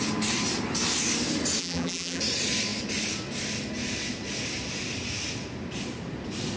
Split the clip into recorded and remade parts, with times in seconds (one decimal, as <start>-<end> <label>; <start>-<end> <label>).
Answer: 0.0-1.6 recorded; 1.6-2.2 remade; 2.2-6.6 recorded